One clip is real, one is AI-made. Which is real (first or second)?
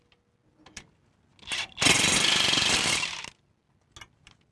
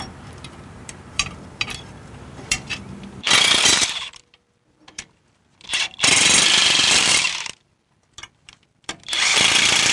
first